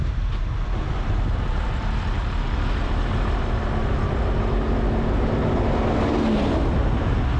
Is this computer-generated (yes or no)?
no